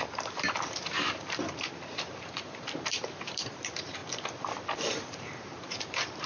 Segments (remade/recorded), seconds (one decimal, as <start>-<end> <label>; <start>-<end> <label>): 0.0-4.0 remade; 4.0-4.9 recorded; 4.9-6.3 remade